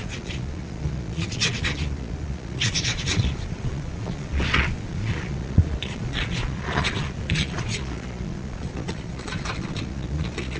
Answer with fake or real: fake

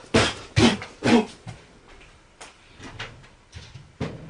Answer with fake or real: real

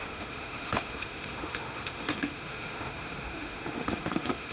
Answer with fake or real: fake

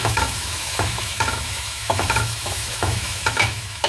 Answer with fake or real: fake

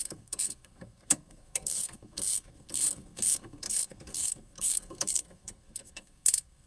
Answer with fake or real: fake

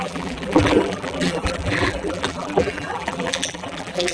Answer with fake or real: fake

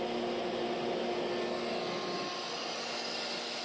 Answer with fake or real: real